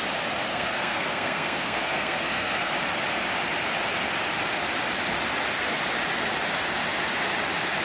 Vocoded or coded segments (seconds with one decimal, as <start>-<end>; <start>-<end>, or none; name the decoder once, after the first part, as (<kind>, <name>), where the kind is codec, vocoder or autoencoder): 0.5-2.7 (codec, SNAC)